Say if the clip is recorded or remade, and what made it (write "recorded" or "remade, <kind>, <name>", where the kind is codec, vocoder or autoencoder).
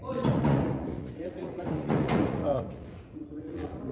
remade, vocoder, Vocos